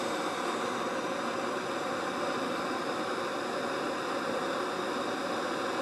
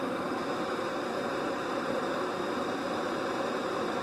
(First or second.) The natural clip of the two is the first